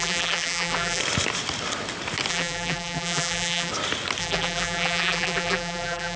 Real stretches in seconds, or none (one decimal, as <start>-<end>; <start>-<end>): 1.0-2.3; 3.7-4.2